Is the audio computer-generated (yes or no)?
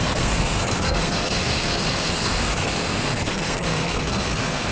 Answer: yes